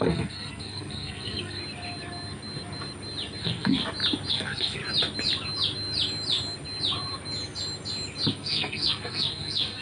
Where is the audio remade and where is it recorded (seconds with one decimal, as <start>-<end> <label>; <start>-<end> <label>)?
0.0-1.6 remade; 1.6-3.4 recorded; 3.4-3.8 remade; 3.8-4.3 recorded; 4.3-4.8 remade; 4.8-8.3 recorded; 8.3-9.8 remade

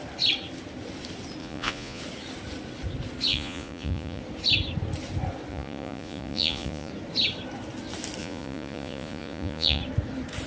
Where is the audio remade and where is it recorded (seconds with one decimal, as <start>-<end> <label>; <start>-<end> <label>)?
0.0-1.4 recorded; 1.4-2.0 remade; 2.0-3.3 recorded; 3.3-4.2 remade; 4.2-5.5 recorded; 5.5-6.9 remade; 6.9-8.2 recorded; 8.2-9.8 remade; 9.8-10.5 recorded